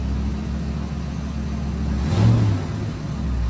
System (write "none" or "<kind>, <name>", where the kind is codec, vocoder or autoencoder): none